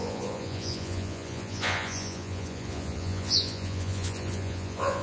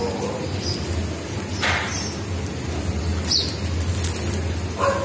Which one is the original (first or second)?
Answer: second